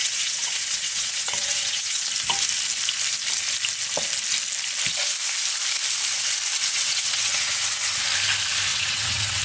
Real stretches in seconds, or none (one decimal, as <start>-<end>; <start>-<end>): 2.0-6.7; 8.0-8.7